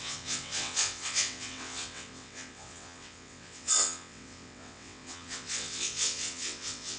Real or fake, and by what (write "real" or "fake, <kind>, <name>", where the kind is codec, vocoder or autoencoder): fake, vocoder, WaveNeXt